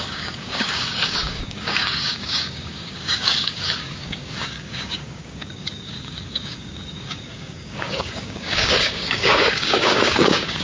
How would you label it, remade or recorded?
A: remade